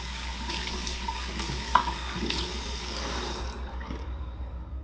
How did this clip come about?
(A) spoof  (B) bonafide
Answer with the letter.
A